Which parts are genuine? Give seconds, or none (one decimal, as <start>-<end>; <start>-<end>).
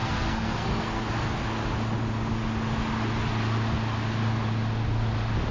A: 1.0-5.5